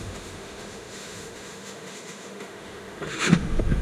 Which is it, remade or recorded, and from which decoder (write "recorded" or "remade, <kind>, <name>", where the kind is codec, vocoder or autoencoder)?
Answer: remade, autoencoder, DAC-VAE